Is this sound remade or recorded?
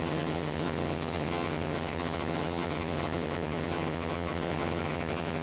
remade